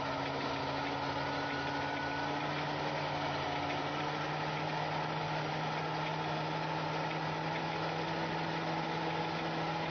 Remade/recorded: recorded